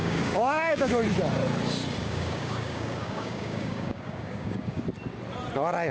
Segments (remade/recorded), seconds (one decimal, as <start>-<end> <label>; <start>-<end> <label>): 0.0-0.9 remade; 0.9-2.0 recorded; 2.0-4.8 remade; 4.8-5.9 recorded